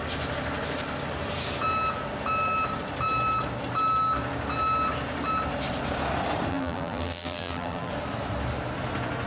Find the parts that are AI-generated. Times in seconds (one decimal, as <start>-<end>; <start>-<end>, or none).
6.5-7.9